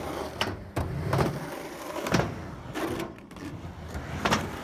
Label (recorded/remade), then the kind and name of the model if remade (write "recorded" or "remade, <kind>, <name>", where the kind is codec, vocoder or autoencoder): recorded